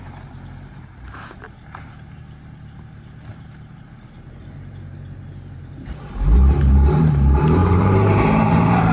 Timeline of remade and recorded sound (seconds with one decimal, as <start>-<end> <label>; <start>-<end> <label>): 0.0-8.9 remade